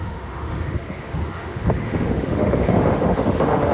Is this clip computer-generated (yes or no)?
yes